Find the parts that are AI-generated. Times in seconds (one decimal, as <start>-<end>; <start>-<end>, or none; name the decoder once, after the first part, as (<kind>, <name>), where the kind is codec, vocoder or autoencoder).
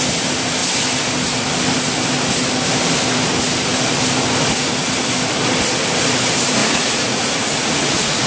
6.6-8.3 (vocoder, Vocos)